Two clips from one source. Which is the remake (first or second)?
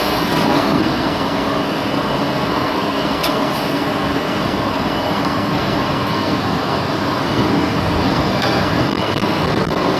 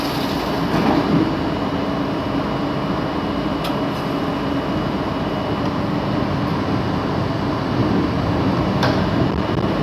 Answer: first